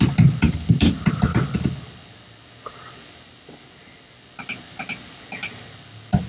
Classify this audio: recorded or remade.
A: recorded